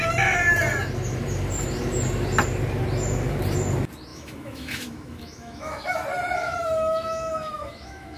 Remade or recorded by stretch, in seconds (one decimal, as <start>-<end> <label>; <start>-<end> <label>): 0.0-4.1 recorded; 4.1-5.9 remade; 5.9-6.6 recorded; 6.6-8.2 remade